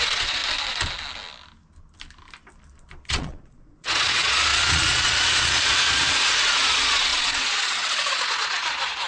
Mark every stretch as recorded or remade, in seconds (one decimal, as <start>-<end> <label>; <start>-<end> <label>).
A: 0.0-0.4 remade; 0.4-3.1 recorded; 3.1-9.1 remade